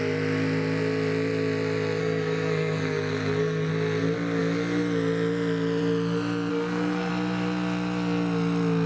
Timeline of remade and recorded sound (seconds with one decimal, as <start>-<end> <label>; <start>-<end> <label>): 0.0-2.0 recorded; 2.0-3.7 remade; 3.7-6.5 recorded; 6.5-7.1 remade; 7.1-8.9 recorded